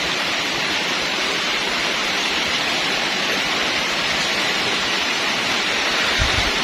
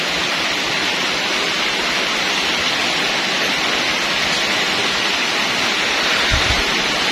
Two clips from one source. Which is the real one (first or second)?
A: second